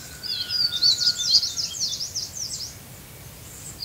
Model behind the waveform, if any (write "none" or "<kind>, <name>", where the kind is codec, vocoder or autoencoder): none